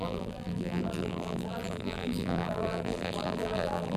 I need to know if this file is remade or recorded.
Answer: remade